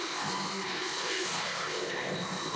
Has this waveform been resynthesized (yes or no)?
yes